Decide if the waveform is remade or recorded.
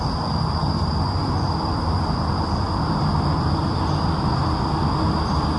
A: recorded